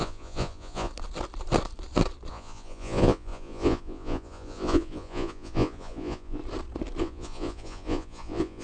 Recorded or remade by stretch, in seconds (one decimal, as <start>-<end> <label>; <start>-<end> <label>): 0.0-0.9 remade; 0.9-2.3 recorded; 2.3-6.4 remade; 6.4-7.0 recorded; 7.0-8.6 remade